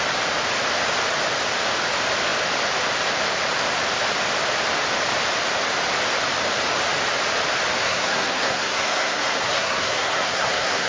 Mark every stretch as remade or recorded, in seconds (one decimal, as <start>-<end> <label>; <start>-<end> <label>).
0.0-7.8 recorded; 7.8-10.9 remade